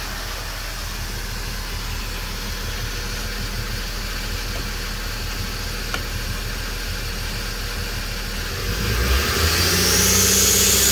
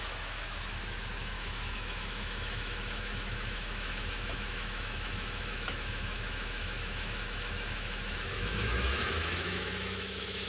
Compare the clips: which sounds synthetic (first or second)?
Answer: second